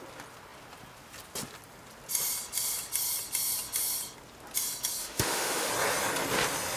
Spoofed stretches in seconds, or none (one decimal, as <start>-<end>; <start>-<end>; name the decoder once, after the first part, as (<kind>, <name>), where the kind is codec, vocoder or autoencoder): 5.0-5.7 (autoencoder, DAC-VAE)